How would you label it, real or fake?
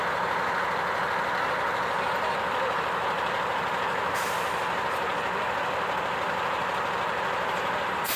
real